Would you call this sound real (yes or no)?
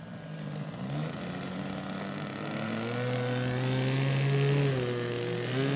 yes